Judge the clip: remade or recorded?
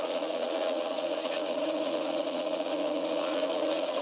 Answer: remade